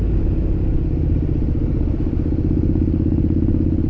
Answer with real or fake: real